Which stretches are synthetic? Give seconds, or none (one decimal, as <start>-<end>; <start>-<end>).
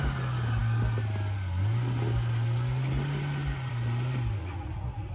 4.4-5.1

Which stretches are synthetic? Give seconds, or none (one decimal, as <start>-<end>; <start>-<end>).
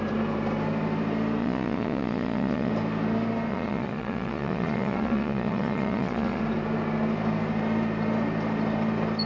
1.4-2.7; 3.5-6.4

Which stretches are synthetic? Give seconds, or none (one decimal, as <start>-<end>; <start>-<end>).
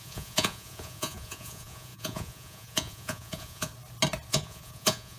0.0-3.7; 4.3-5.2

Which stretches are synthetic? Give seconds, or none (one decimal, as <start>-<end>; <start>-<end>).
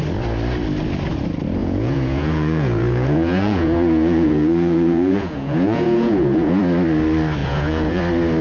1.6-6.6; 7.4-8.0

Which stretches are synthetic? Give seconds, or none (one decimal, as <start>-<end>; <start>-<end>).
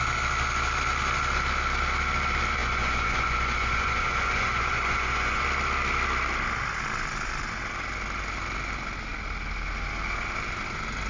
2.6-5.4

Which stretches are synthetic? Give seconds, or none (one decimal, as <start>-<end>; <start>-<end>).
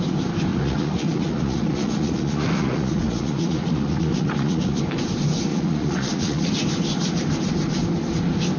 0.5-4.8; 5.5-6.5